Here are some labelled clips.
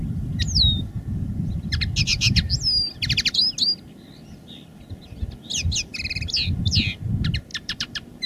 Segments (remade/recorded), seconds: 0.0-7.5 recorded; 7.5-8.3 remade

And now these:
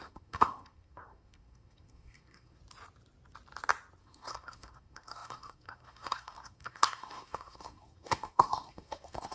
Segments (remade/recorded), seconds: 0.0-2.6 remade; 2.6-4.0 recorded; 4.0-9.3 remade